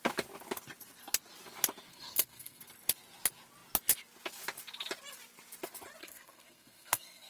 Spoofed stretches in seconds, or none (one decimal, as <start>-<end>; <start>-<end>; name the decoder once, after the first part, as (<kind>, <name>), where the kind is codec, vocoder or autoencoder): 1.9-2.6 (codec, SNAC); 6.0-7.3